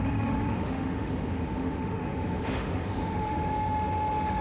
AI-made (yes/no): yes